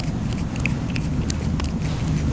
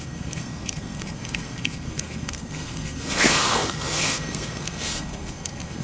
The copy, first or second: second